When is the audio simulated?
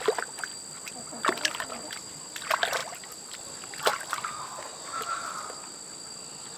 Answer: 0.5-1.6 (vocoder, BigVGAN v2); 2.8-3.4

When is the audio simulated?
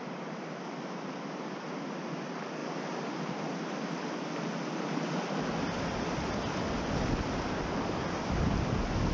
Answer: none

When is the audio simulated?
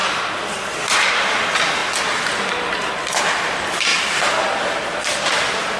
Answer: 0.0-1.1 (vocoder, BigVGAN v2); 3.9-5.0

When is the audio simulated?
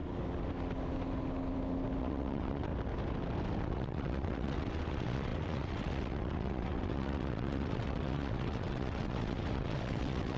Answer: 2.0-2.7 (vocoder, WaveNeXt); 3.6-10.4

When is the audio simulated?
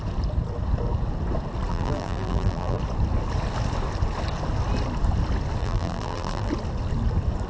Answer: 1.7-2.8 (vocoder, BigVGAN v2); 5.6-6.5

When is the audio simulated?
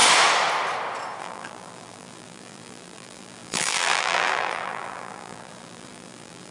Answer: 1.2-6.5 (vocoder, BigVGAN v2)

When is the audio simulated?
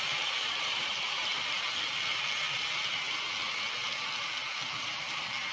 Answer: 0.0-1.2 (vocoder, BigVGAN v2); 4.5-5.5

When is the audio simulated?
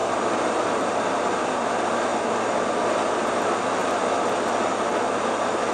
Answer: 0.0-1.1 (vocoder, BigVGAN v2); 2.1-3.2